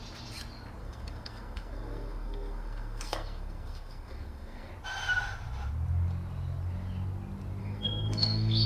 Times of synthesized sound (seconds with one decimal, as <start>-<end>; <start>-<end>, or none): 0.8-4.7; 7.6-8.7